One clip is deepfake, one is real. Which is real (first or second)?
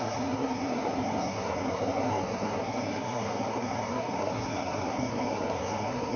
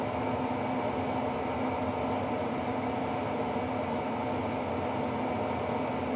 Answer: second